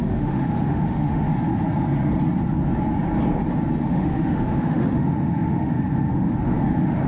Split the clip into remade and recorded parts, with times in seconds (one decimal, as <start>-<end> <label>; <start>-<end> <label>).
0.0-1.3 remade; 1.3-3.8 recorded; 3.8-7.1 remade